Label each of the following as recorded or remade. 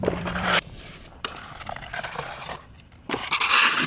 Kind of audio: remade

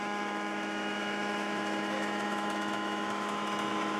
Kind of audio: remade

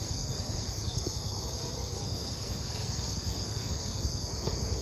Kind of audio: remade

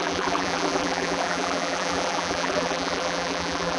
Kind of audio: remade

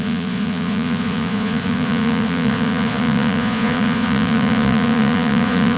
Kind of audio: remade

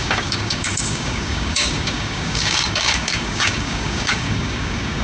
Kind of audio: remade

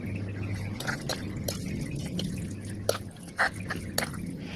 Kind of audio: recorded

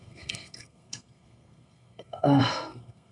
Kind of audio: remade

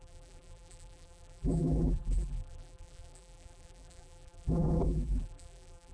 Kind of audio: remade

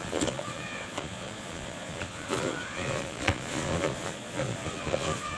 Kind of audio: remade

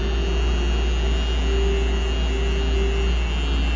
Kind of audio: recorded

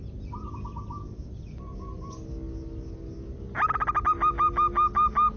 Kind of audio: recorded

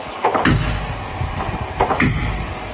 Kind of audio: recorded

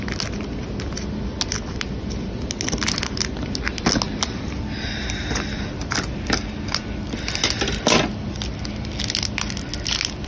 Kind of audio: recorded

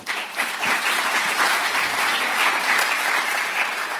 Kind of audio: remade